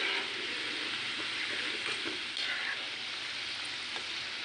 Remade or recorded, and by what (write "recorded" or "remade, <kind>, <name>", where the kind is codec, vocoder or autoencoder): recorded